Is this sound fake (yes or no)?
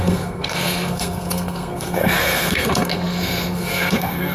yes